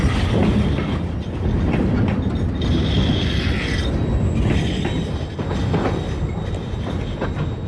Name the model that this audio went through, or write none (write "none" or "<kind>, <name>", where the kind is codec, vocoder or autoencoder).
none